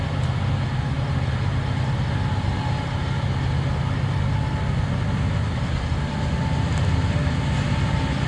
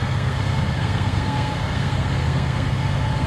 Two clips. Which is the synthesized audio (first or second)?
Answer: second